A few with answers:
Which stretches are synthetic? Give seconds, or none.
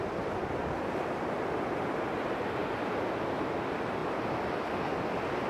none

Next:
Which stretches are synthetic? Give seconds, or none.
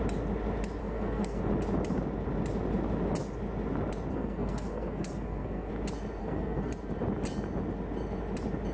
0.8-1.4 (codec, SNAC); 4.1-5.7; 6.2-6.7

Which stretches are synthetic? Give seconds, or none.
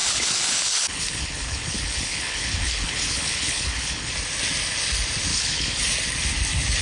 0.0-4.1 (codec, HILCodec); 5.3-5.8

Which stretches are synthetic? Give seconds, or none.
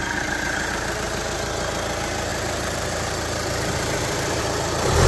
0.0-0.7 (vocoder, BigVGAN v2); 2.3-4.4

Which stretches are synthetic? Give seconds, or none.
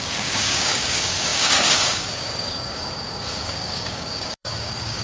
0.0-5.0 (codec, DAC)